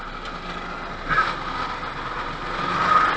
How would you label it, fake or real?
real